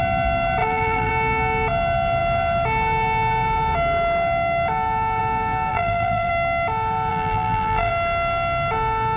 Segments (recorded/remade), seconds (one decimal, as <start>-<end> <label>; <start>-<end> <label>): 0.0-0.6 recorded; 0.6-1.1 remade; 1.1-5.7 recorded; 5.7-6.3 remade; 6.3-7.1 recorded; 7.1-7.9 remade; 7.9-9.2 recorded